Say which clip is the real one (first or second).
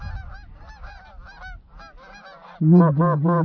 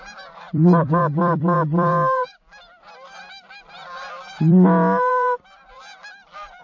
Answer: first